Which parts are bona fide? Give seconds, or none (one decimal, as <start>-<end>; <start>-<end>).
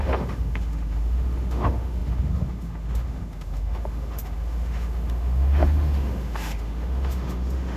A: none